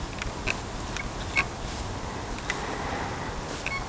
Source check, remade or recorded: recorded